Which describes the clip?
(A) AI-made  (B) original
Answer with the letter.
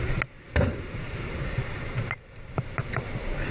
B